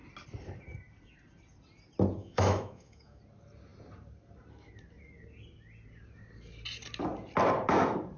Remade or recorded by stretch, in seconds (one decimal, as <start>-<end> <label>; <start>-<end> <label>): 0.0-2.2 recorded; 2.2-3.2 remade; 3.2-8.2 recorded